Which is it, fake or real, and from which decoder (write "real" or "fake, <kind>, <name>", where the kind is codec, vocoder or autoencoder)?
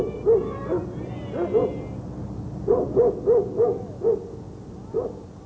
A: real